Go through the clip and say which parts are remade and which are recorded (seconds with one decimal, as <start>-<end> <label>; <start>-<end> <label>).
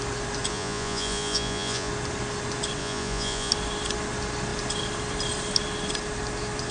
0.0-0.5 recorded; 0.5-1.9 remade; 1.9-2.8 recorded; 2.8-3.5 remade; 3.5-6.7 recorded